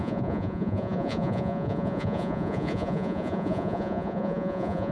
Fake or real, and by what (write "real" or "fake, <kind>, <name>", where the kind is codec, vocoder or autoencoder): fake, vocoder, Vocos